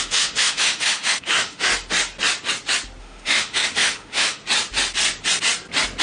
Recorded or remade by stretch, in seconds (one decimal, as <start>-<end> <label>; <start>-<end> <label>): 0.0-1.7 remade; 1.7-3.0 recorded; 3.0-4.4 remade; 4.4-6.0 recorded